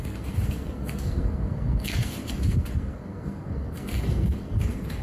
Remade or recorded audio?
remade